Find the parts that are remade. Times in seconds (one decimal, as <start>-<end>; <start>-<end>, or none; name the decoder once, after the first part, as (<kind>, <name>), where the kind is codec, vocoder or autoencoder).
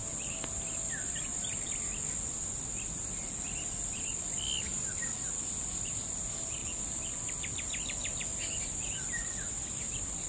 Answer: none